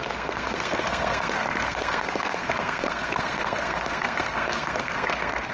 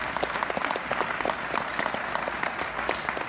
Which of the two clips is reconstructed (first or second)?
first